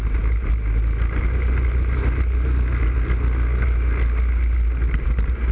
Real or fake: real